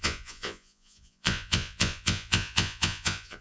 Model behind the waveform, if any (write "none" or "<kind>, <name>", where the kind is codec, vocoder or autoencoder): vocoder, Vocos